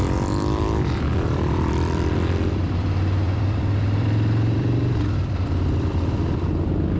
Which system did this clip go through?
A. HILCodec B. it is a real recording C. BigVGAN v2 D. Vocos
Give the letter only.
C